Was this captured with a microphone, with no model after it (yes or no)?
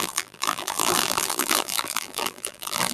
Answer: no